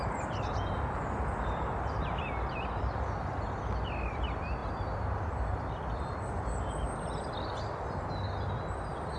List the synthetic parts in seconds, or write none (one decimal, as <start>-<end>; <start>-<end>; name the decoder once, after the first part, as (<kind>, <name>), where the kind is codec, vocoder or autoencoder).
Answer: none